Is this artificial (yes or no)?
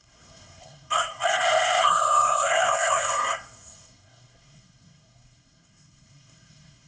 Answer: yes